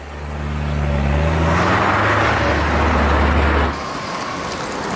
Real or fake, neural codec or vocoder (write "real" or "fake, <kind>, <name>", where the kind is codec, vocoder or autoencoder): real